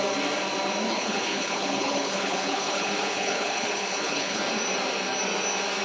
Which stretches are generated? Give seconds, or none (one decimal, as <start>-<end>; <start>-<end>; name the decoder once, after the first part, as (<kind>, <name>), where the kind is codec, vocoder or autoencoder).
0.9-4.4 (codec, HILCodec)